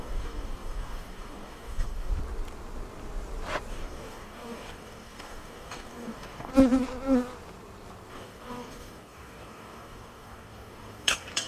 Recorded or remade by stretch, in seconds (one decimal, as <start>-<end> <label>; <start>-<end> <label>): 0.0-2.1 remade; 2.1-3.7 recorded; 3.7-6.5 remade; 6.5-8.1 recorded; 8.1-11.5 remade